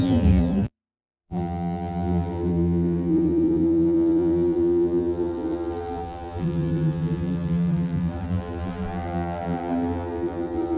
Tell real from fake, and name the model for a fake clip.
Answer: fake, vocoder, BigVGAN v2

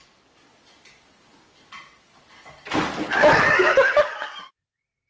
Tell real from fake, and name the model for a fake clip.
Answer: real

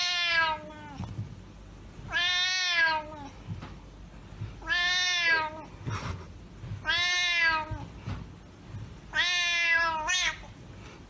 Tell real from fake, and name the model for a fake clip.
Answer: real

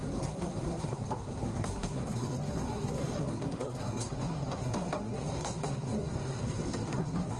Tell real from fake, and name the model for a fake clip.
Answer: fake, codec, SNAC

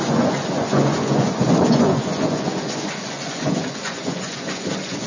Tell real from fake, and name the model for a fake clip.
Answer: fake, vocoder, Vocos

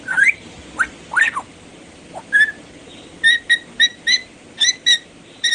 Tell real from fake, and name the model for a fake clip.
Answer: real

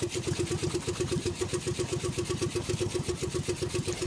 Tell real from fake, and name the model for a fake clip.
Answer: real